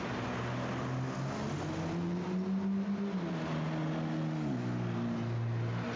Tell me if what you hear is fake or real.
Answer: real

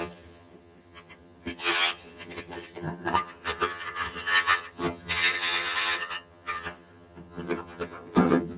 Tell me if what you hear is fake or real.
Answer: fake